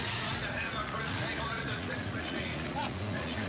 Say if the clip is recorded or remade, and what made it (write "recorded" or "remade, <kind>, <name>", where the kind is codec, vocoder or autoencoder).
remade, vocoder, Vocos